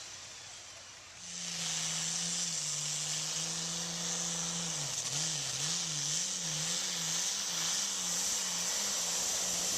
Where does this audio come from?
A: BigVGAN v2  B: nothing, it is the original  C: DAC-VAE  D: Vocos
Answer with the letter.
B